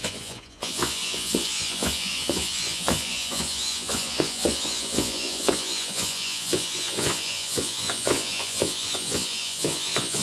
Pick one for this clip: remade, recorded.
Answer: remade